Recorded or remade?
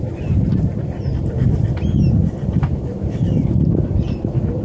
remade